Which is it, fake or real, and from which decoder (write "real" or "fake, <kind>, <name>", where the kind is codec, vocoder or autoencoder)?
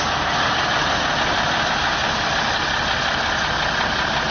real